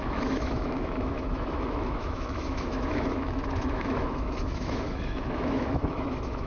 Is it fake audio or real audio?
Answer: fake